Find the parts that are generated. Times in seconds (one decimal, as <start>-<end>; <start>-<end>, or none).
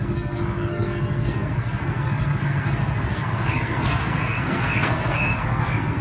0.0-6.0